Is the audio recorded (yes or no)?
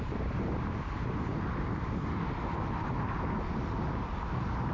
yes